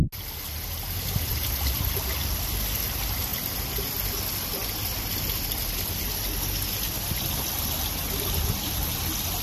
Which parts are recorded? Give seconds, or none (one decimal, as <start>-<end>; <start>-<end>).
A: 0.0-9.4

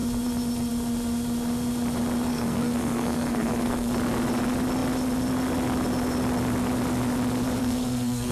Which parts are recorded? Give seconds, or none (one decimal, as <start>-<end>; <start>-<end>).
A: 0.0-2.3; 3.9-7.6

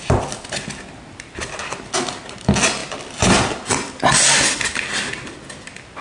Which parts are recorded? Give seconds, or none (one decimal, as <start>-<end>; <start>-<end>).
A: 0.0-6.0

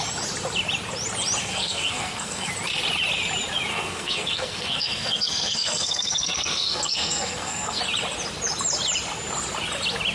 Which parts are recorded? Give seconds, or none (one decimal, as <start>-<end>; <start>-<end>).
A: 0.0-1.4; 2.5-3.7; 7.8-10.1

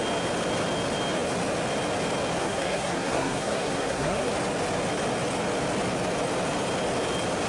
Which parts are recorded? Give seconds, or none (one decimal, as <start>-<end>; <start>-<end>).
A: 0.0-2.4; 4.3-7.5